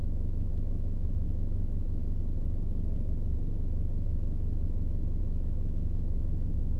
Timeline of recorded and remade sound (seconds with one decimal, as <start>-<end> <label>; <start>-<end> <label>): 0.0-2.0 remade; 2.0-5.2 recorded; 5.2-6.8 remade